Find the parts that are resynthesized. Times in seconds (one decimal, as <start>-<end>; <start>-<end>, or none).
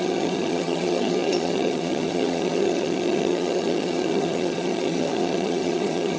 0.0-6.2